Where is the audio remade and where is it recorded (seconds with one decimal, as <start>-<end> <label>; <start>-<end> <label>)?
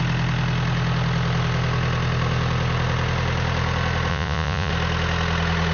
0.0-4.1 recorded; 4.1-4.7 remade; 4.7-5.7 recorded